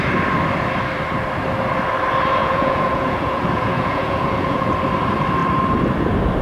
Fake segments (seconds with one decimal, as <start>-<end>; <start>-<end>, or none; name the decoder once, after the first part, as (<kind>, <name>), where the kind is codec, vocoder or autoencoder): 2.4-4.7 (vocoder, Vocos)